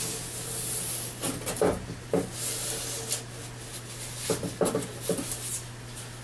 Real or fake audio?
real